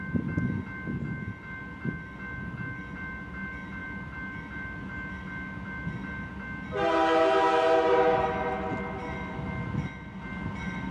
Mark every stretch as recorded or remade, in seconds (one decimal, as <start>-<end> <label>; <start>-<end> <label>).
0.0-10.9 recorded